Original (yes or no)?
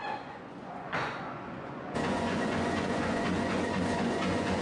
no